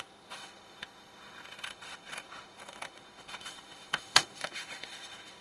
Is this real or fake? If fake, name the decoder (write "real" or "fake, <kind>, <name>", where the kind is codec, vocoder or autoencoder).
fake, autoencoder, DAC-VAE